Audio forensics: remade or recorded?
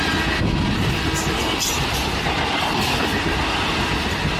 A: recorded